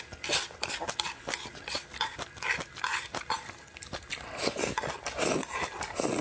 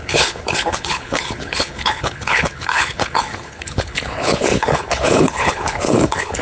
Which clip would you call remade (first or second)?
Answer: second